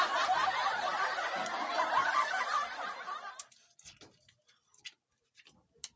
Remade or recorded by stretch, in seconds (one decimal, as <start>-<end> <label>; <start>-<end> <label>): 0.0-6.0 recorded